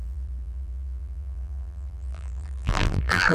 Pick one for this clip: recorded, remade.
remade